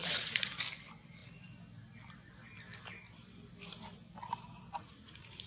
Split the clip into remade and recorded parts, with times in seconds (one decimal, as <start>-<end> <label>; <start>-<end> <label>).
0.0-0.5 remade; 0.5-4.8 recorded; 4.8-5.5 remade